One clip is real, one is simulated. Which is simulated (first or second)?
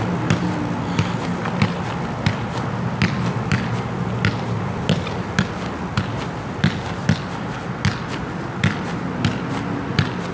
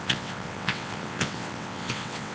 second